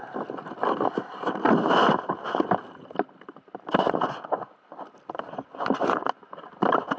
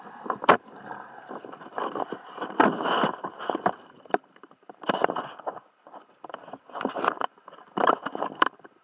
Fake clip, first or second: second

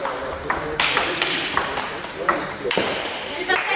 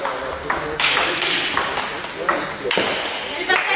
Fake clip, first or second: first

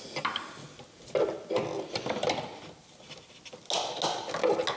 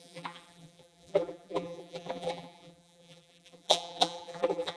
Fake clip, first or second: second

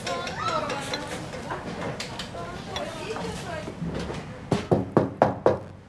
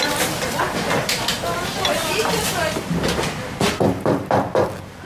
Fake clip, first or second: second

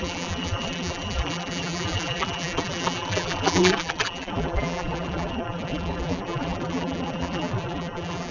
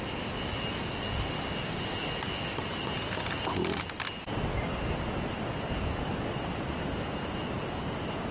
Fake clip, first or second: first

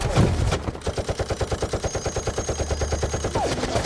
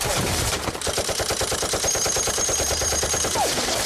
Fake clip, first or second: second